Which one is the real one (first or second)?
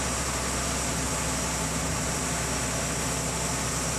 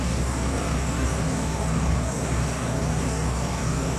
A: first